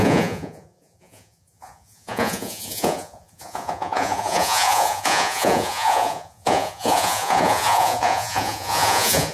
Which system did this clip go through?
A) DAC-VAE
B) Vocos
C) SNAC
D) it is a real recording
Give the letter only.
B